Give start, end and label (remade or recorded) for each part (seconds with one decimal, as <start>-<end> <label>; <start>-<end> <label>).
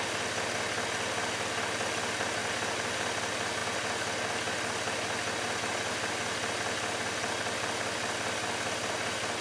0.0-9.4 recorded